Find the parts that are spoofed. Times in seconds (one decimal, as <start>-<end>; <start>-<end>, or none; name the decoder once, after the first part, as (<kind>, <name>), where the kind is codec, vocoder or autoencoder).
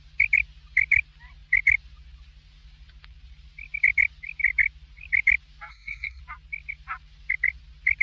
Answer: 5.7-6.2 (codec, SNAC)